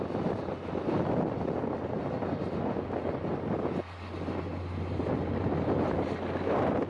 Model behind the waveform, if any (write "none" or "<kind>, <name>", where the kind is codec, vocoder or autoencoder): none